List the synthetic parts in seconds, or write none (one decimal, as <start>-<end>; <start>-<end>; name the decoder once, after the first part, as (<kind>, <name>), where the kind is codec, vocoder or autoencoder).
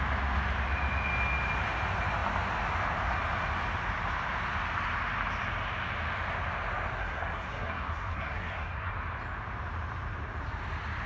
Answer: 7.0-8.9 (codec, SNAC)